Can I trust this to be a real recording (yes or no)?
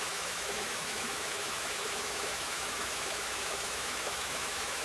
no